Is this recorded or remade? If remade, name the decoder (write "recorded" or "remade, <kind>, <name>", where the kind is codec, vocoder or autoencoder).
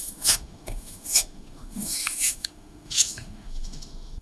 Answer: remade, autoencoder, DAC-VAE